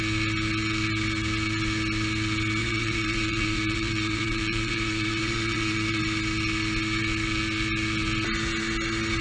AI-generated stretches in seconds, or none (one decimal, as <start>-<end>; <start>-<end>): 2.6-6.0